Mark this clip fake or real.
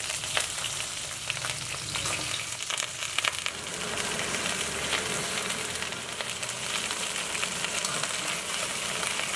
real